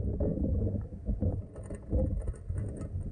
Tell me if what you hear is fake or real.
real